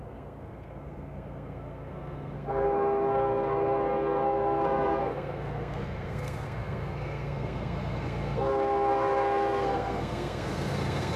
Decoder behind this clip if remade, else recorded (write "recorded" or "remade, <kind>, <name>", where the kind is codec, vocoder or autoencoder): remade, codec, SNAC